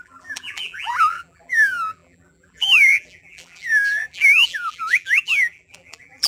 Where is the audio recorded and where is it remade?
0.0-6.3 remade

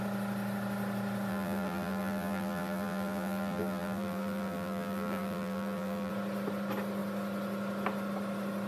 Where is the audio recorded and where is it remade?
0.0-1.3 recorded; 1.3-6.1 remade; 6.1-8.7 recorded

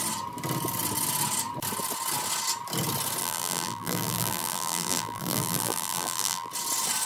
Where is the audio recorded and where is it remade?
0.0-3.2 recorded; 3.2-6.5 remade; 6.5-7.1 recorded